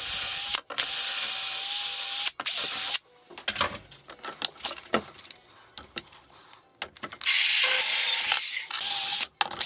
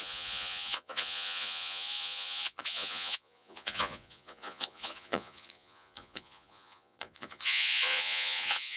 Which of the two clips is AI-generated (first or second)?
second